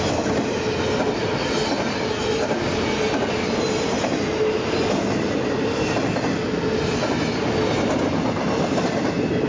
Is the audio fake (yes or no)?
no